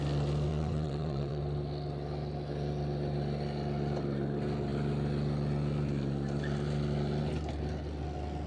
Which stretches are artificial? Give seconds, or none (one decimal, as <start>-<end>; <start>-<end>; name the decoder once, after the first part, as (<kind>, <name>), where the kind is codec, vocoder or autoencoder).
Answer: 0.5-1.4 (vocoder, WaveNeXt)